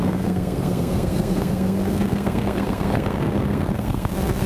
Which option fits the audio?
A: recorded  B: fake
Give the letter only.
B